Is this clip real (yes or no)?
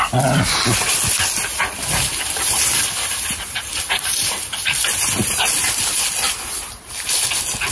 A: yes